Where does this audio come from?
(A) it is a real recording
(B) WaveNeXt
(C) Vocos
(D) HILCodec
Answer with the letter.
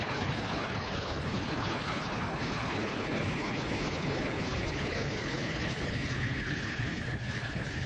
D